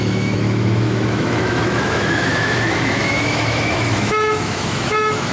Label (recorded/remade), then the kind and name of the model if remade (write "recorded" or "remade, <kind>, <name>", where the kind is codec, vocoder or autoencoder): remade, autoencoder, DAC-VAE